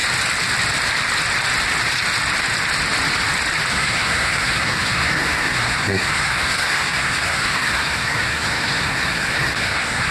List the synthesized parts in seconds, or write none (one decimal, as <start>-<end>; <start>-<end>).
3.7-10.1

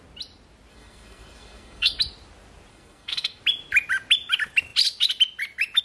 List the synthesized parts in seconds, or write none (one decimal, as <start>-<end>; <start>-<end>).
0.7-2.0; 2.7-3.4

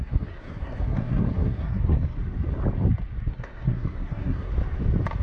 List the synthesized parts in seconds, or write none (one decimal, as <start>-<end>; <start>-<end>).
0.0-2.2; 3.3-4.5

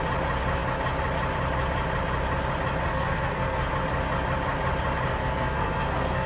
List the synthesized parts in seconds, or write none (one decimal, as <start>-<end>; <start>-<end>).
2.9-3.7; 5.1-6.3

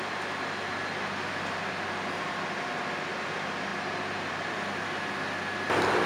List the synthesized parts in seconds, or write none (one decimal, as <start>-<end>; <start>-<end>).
none

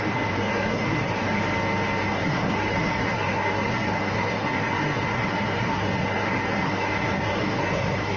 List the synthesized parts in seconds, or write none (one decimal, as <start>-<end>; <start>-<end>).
0.0-1.4; 2.0-8.2